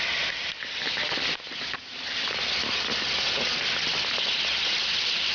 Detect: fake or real real